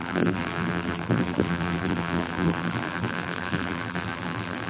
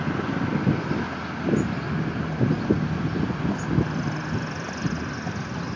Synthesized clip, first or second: first